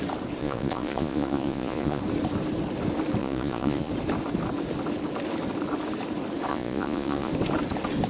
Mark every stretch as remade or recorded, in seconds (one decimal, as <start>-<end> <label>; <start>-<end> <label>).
0.0-0.4 recorded; 0.4-2.0 remade; 2.0-3.2 recorded; 3.2-3.9 remade; 3.9-6.5 recorded; 6.5-7.3 remade; 7.3-8.1 recorded